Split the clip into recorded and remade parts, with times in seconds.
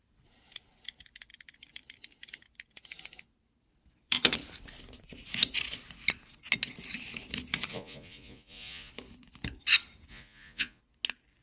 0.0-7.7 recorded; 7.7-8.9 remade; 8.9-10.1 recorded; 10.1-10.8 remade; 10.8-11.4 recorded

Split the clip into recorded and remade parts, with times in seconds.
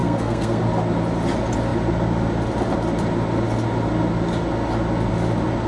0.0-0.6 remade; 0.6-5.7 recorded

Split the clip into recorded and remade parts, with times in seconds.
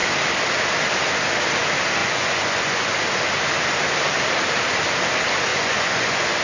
0.0-2.0 recorded; 2.0-2.9 remade; 2.9-5.5 recorded; 5.5-6.4 remade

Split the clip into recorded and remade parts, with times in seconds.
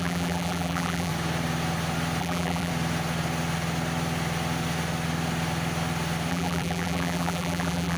0.0-1.1 remade; 1.1-2.2 recorded; 2.2-2.7 remade; 2.7-6.3 recorded; 6.3-8.0 remade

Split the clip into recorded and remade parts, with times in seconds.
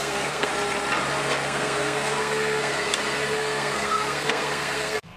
0.0-0.5 remade; 0.5-1.2 recorded; 1.2-5.2 remade